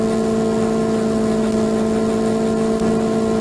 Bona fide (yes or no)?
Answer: yes